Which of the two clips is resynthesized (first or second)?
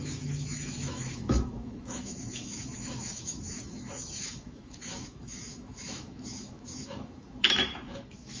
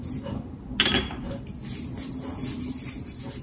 first